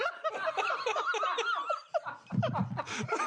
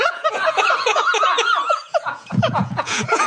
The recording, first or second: first